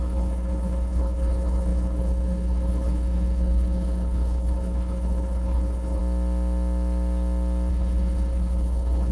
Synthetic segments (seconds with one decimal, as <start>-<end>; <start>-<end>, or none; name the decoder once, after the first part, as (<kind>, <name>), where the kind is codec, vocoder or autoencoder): 0.0-6.0 (codec, HILCodec); 7.7-9.1

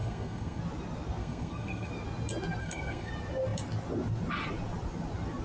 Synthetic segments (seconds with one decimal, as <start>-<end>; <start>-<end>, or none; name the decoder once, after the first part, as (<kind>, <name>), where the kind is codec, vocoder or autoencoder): 0.0-0.6 (codec, SNAC); 1.2-1.9; 2.6-3.1

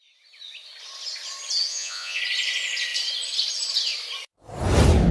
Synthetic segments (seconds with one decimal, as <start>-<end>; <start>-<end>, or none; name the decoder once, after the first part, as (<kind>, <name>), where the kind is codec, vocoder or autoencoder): 1.7-2.2 (vocoder, Vocos)

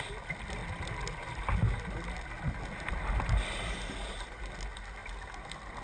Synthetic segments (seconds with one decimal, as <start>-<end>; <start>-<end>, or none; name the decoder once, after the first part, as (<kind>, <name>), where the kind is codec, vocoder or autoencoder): none